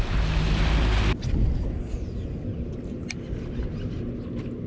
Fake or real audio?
real